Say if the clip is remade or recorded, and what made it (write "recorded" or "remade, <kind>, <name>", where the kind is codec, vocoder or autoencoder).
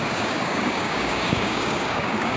remade, codec, DAC